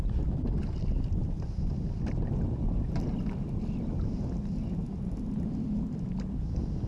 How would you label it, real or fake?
real